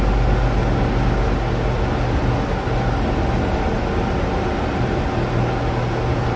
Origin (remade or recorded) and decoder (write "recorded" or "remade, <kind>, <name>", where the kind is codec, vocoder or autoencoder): recorded